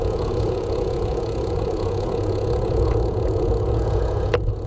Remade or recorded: remade